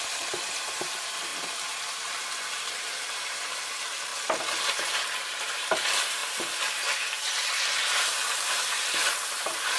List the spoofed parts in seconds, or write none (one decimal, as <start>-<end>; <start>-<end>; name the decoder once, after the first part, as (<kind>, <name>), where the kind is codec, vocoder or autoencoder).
0.0-1.3 (vocoder, BigVGAN v2); 2.2-4.1; 4.7-9.8